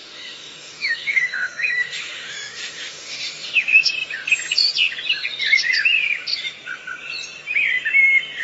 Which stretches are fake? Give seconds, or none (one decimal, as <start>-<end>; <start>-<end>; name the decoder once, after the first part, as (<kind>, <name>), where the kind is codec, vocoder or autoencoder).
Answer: 0.0-3.9 (autoencoder, DAC-VAE)